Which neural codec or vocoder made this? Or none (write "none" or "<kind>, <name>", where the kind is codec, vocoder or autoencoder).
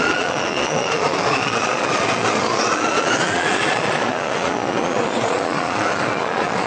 vocoder, Vocos